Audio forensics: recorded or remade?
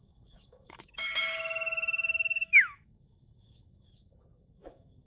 remade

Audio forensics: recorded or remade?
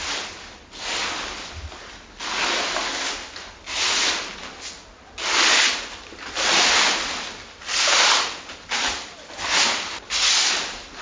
recorded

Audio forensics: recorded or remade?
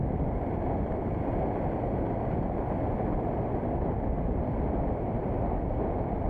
recorded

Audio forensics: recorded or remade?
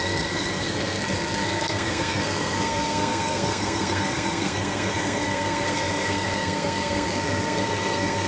remade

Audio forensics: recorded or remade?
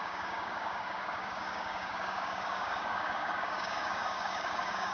remade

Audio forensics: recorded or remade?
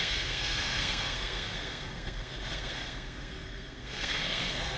remade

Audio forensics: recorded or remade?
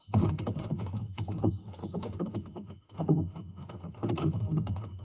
remade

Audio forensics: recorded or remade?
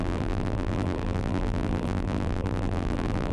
remade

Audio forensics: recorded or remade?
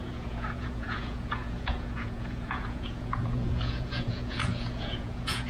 remade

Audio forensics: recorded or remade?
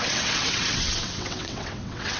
remade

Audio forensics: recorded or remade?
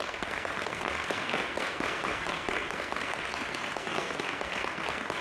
remade